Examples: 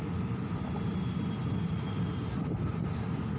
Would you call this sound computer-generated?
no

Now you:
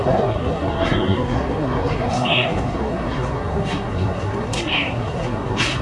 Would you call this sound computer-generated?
yes